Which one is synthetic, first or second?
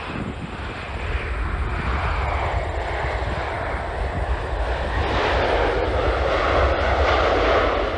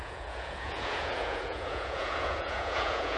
second